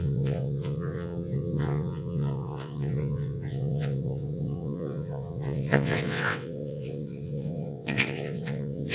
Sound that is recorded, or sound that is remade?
remade